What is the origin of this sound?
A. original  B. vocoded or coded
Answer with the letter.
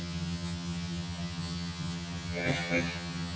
B